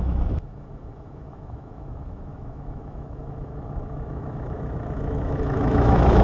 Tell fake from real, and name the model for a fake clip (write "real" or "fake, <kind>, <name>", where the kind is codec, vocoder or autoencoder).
fake, autoencoder, DAC-VAE